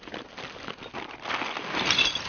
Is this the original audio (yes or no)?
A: yes